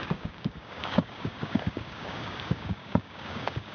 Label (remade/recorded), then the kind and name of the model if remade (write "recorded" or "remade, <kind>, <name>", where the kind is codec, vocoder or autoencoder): remade, codec, DAC